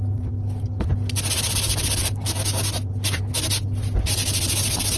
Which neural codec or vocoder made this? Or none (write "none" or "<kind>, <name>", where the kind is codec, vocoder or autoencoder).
none